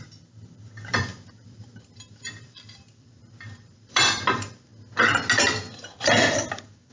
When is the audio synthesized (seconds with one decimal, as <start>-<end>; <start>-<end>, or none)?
0.0-4.7; 5.6-6.9